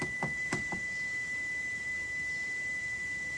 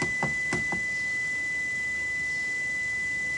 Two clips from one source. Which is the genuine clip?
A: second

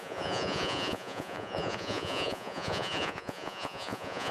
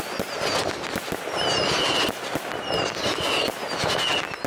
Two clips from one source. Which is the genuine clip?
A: second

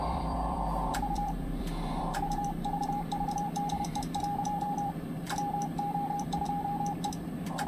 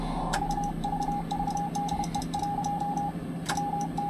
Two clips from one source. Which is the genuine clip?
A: second